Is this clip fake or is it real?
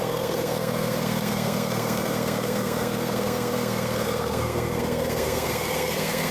fake